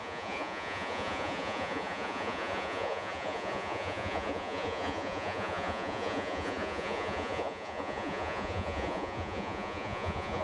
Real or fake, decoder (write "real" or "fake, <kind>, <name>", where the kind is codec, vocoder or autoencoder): fake, vocoder, Vocos